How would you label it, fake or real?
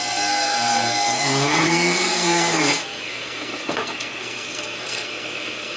fake